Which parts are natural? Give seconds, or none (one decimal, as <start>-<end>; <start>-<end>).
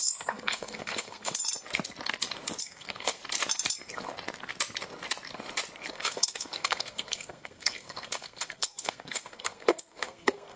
1.4-2.6; 3.2-5.9